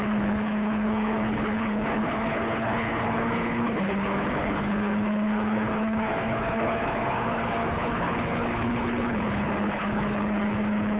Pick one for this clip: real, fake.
fake